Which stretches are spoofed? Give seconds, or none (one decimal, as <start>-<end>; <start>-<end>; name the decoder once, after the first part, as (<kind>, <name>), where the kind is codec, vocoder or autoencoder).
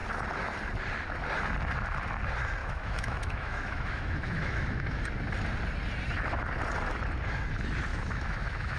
2.6-5.0 (autoencoder, DAC-VAE); 7.9-8.8